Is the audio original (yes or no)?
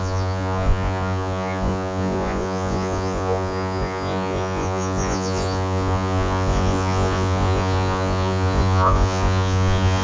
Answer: no